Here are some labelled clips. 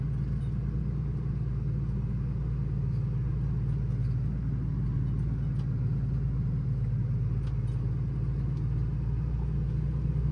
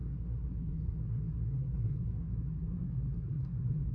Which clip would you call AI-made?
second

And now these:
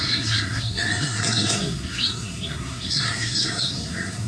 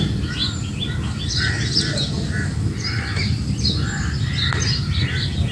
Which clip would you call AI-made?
first